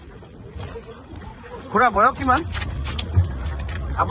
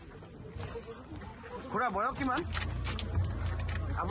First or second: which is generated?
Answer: first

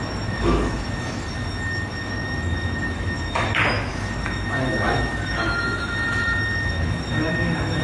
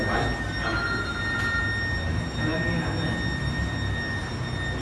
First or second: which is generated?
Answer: first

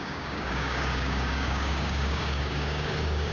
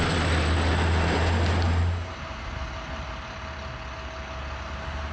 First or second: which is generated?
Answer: first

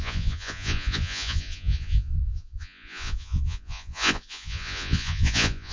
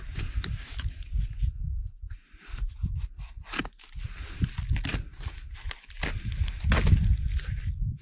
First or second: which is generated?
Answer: first